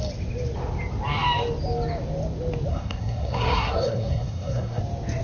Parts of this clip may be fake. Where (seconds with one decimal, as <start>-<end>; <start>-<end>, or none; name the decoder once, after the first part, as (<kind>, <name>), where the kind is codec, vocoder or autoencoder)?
2.7-4.8 (codec, SNAC)